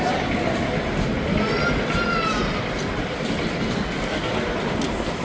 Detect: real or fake real